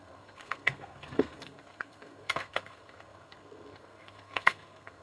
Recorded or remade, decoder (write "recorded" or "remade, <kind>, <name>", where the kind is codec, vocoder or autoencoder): remade, codec, SNAC